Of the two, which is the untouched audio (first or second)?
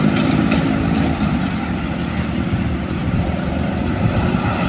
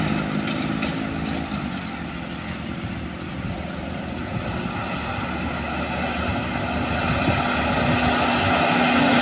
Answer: second